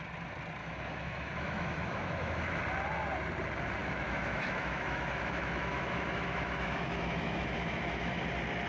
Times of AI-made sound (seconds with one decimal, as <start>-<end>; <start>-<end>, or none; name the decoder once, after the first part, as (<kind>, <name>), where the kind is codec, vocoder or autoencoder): 0.6-2.6 (autoencoder, DAC-VAE); 3.8-8.2